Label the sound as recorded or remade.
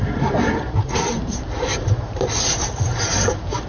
remade